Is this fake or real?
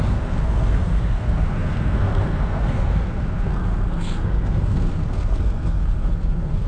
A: fake